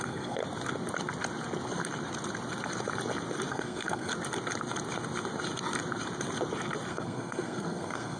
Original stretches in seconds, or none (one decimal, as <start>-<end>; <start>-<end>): 0.4-3.5; 4.1-6.9

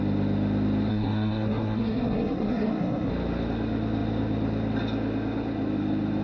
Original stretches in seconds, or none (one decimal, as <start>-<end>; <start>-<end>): 0.0-0.9; 3.1-6.2

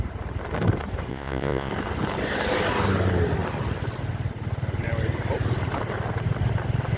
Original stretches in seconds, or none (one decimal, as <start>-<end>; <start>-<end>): 0.0-1.1; 1.7-7.0

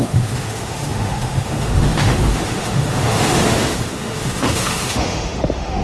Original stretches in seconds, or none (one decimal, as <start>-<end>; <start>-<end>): none

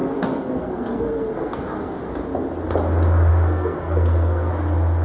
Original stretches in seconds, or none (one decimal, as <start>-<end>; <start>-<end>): 2.1-3.3; 4.5-5.0

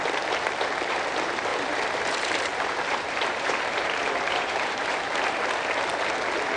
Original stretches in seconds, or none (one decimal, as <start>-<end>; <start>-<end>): 0.0-1.5; 5.4-6.6